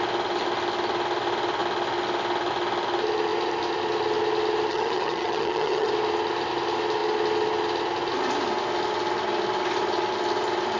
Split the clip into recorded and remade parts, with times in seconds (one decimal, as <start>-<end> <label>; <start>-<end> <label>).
0.0-4.7 recorded; 4.7-5.9 remade; 5.9-10.8 recorded